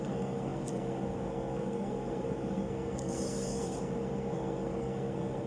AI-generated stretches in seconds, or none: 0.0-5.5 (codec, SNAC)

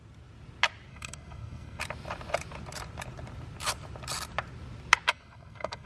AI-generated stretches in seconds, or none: 0.9-1.8 (codec, SNAC); 5.1-5.9

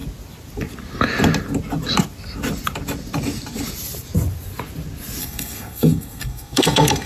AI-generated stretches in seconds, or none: 5.2-7.1 (codec, SNAC)

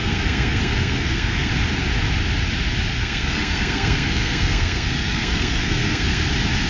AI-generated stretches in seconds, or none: 0.0-1.5 (codec, SNAC); 2.9-6.3

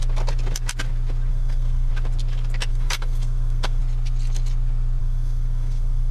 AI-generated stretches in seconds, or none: 1.3-1.9 (codec, SNAC); 2.7-3.8; 5.0-6.1

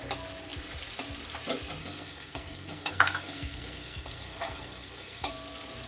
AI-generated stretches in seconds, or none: 1.8-5.3 (codec, SNAC)

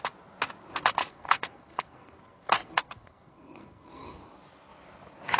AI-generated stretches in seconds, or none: 1.0-4.2 (codec, SNAC)